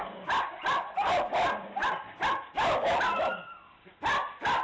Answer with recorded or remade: recorded